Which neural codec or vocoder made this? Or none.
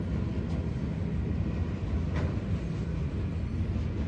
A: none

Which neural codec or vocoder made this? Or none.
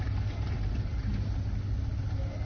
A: none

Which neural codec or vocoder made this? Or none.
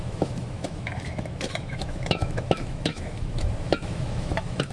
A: autoencoder, DAC-VAE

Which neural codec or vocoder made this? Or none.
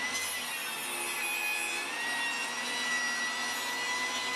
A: none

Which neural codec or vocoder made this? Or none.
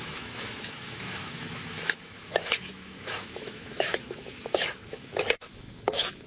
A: autoencoder, DAC-VAE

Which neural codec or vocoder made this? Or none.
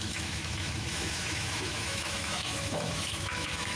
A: autoencoder, DAC-VAE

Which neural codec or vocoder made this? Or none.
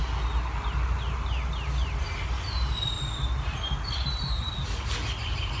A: none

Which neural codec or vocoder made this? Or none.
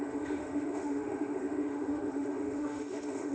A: autoencoder, DAC-VAE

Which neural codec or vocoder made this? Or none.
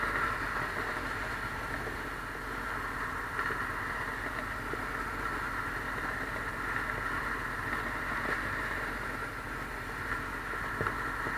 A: none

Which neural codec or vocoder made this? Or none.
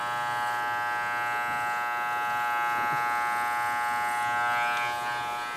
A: none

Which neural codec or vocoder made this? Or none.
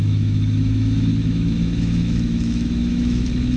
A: autoencoder, DAC-VAE